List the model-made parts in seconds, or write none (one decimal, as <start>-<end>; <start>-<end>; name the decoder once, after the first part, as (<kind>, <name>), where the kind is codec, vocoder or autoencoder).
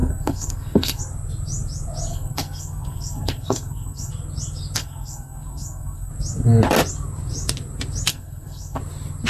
0.0-1.0 (codec, SNAC); 2.1-4.1; 4.8-6.1; 8.1-8.8